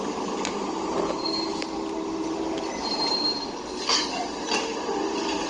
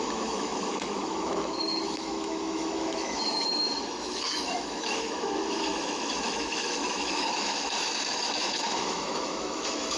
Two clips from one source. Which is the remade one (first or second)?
second